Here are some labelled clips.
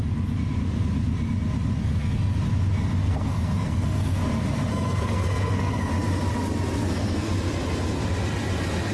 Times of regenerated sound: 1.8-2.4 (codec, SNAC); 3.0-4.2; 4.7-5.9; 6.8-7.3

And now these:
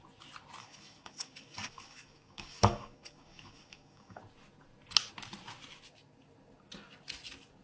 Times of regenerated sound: 0.6-4.2 (codec, DAC)

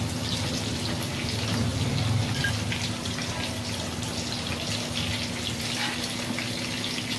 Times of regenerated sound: none

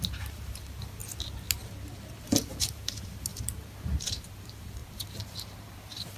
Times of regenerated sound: 0.0-1.0 (vocoder, BigVGAN v2); 2.2-6.2

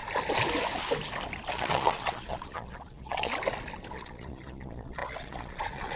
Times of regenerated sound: 1.5-3.3 (vocoder, Vocos); 3.9-6.0